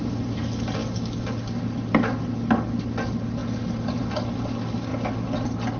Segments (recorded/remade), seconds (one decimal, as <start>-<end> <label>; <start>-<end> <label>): 0.0-5.8 recorded